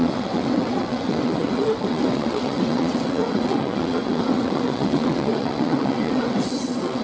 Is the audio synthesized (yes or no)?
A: yes